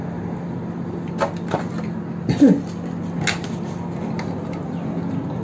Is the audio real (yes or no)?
yes